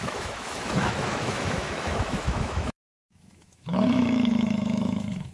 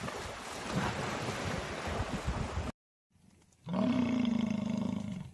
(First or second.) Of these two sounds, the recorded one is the second